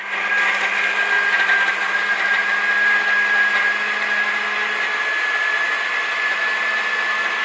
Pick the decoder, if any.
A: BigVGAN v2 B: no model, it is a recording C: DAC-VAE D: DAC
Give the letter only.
B